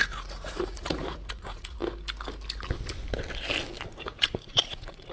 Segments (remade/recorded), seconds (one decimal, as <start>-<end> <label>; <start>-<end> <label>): 0.0-1.8 remade; 1.8-3.9 recorded; 3.9-5.1 remade